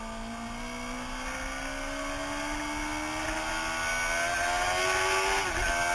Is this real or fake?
real